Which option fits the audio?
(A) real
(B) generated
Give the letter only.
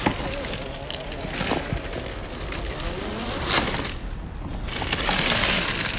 A